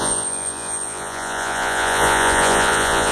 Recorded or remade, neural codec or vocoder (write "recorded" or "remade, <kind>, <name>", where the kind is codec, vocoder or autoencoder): remade, vocoder, Vocos